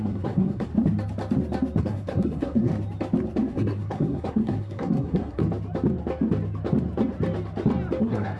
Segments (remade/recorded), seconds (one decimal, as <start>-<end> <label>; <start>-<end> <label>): 0.0-0.7 remade; 0.7-1.8 recorded; 1.8-2.7 remade; 2.7-3.5 recorded; 3.5-5.4 remade; 5.4-8.0 recorded; 8.0-8.4 remade